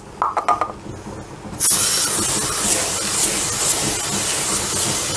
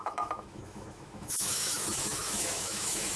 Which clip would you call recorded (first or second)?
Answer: first